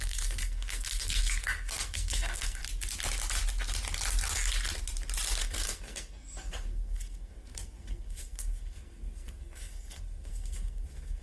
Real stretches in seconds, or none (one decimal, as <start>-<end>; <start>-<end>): 2.6-5.4